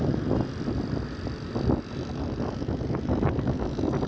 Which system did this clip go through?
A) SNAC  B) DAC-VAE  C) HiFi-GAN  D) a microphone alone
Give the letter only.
D